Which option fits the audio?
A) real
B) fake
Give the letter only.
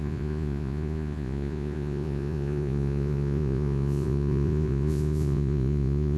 B